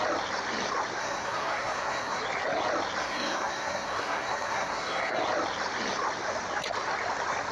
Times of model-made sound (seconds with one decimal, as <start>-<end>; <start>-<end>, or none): 1.0-2.2; 3.0-5.2